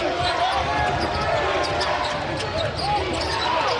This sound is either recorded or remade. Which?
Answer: recorded